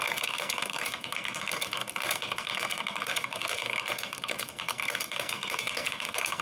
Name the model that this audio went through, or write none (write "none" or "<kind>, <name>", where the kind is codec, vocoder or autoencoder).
codec, SNAC